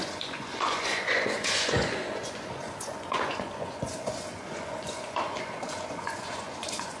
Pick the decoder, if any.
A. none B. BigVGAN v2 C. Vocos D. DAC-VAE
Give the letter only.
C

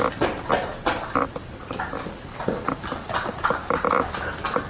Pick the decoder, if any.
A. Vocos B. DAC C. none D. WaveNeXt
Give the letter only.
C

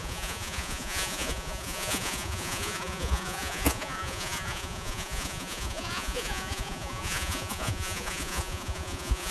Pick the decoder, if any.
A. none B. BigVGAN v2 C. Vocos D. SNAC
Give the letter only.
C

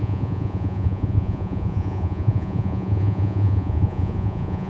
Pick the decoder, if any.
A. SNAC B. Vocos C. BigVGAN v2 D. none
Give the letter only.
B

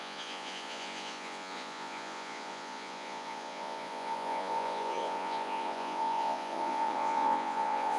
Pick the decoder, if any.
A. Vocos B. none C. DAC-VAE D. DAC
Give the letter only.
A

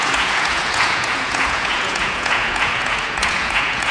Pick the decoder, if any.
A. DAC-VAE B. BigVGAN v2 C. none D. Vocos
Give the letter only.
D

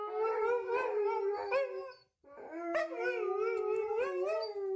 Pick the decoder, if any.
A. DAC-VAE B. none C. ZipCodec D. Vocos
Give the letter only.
B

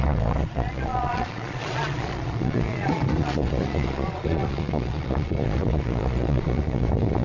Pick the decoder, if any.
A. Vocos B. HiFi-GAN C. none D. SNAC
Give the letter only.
A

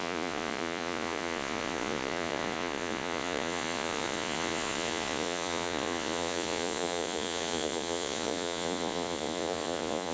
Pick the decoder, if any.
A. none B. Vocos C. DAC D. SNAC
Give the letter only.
B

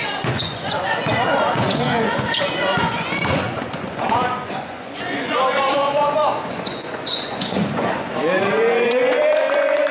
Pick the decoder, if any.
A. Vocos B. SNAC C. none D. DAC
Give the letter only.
A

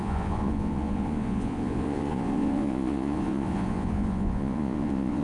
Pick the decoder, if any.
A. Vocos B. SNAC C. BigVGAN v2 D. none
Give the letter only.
A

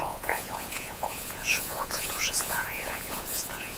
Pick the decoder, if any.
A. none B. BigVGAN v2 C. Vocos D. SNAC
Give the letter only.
C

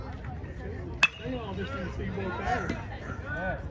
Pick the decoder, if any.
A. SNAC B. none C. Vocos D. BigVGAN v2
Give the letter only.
B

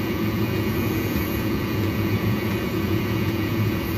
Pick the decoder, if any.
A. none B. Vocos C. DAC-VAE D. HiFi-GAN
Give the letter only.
B